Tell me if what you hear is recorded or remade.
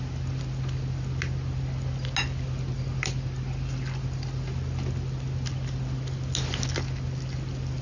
recorded